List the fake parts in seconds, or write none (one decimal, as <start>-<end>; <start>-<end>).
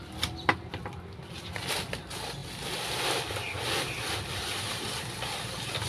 none